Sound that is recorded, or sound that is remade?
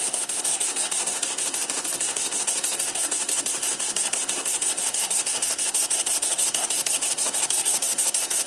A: remade